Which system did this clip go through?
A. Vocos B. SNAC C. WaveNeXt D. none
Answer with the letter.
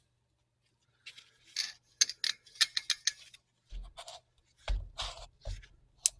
D